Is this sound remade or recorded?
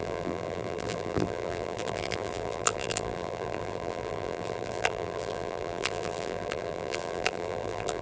remade